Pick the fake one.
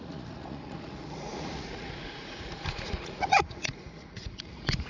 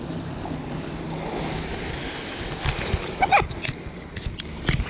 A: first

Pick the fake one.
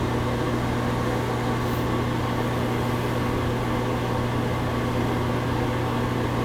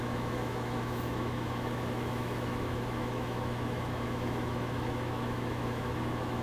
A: second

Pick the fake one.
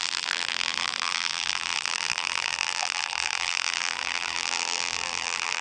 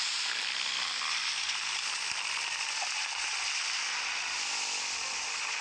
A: first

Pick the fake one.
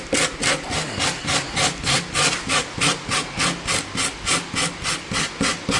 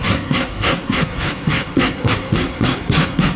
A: second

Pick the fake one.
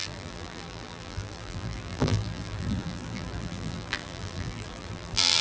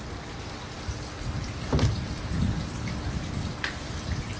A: first